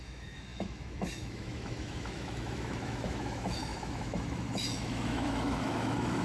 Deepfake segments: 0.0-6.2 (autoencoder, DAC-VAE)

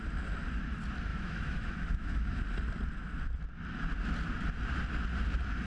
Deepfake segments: 1.1-2.4 (autoencoder, DAC-VAE)

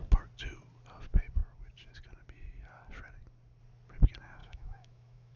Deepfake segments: 4.4-5.4 (autoencoder, DAC-VAE)

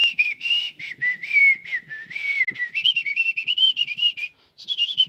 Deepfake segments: 0.0-0.8 (autoencoder, DAC-VAE)

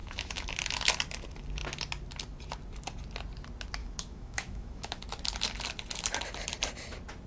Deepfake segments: 0.0-0.5 (autoencoder, DAC-VAE); 3.8-5.0